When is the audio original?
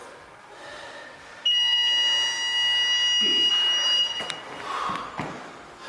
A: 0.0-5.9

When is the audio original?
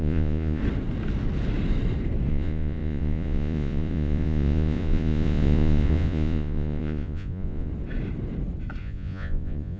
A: 0.6-2.3; 7.7-8.8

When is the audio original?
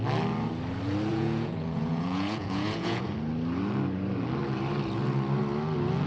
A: 0.0-1.1; 3.1-6.1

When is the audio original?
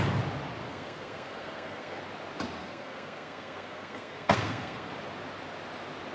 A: 0.0-0.7; 2.0-2.6; 4.9-6.1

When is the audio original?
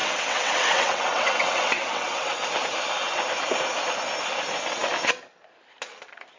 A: 2.4-6.4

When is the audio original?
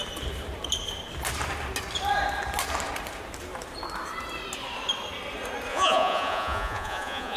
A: 0.0-5.7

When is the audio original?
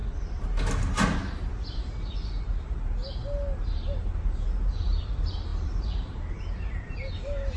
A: 0.0-2.4; 3.0-4.8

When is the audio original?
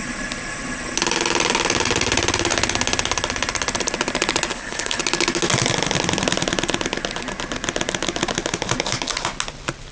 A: 0.0-4.5; 5.0-9.9